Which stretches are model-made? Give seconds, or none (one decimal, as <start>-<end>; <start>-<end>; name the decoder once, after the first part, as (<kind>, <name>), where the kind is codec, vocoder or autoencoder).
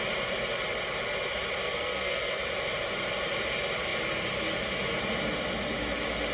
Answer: 1.6-2.4 (codec, SNAC)